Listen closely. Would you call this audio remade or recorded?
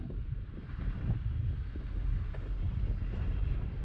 remade